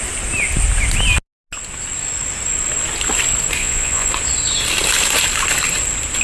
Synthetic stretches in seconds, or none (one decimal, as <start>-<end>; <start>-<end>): 3.6-4.1